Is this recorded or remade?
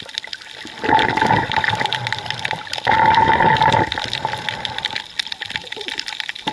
recorded